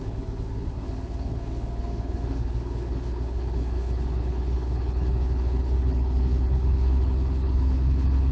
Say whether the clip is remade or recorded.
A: remade